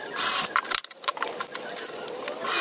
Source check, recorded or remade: recorded